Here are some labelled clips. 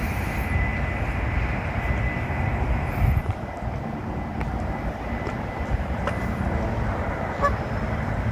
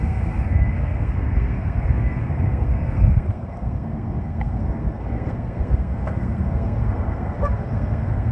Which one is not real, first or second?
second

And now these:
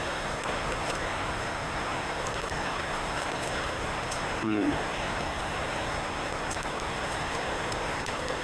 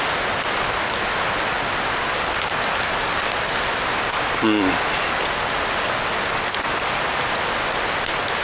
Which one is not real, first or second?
first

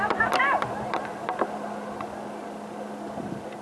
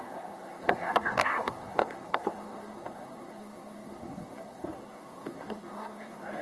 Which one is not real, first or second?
second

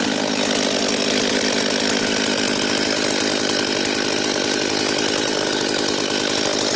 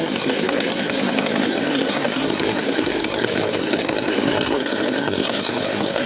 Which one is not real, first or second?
second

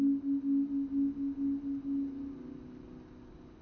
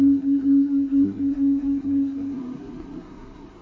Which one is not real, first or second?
second